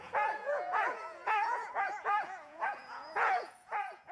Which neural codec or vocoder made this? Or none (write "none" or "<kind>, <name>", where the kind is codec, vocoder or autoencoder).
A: vocoder, Vocos